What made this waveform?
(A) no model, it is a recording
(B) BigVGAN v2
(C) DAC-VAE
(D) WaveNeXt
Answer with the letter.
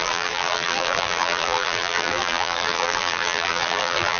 B